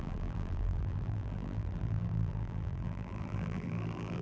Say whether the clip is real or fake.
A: fake